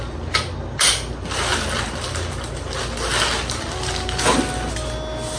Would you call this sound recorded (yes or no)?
yes